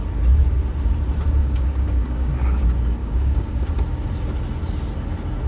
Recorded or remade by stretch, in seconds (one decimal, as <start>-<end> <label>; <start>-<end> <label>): 0.0-1.4 recorded; 1.4-2.3 remade; 2.3-3.0 recorded; 3.0-3.7 remade; 3.7-5.5 recorded